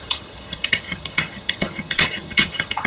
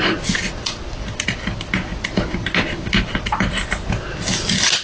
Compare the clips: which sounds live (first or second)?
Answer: second